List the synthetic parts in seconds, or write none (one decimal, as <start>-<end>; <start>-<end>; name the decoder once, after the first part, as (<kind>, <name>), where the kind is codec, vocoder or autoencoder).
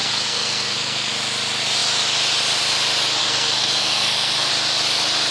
0.0-1.1 (codec, SNAC); 3.2-4.5